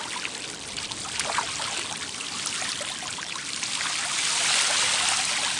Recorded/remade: recorded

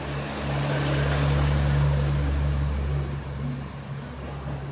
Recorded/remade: recorded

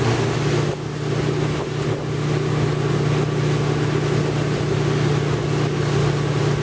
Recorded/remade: recorded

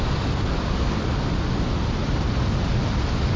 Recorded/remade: recorded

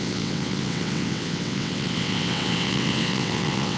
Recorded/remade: remade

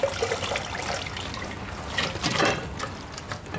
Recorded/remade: recorded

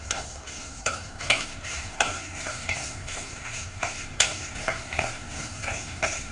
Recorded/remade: remade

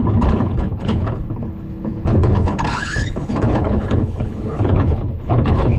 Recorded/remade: remade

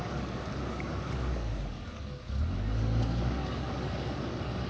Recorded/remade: remade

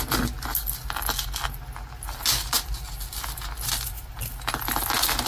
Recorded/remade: recorded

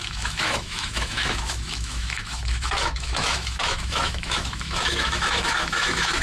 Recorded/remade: remade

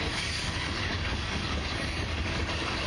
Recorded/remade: remade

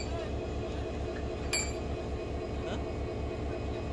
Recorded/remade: recorded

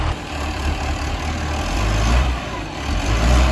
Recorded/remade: remade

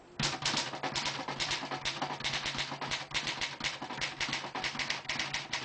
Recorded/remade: recorded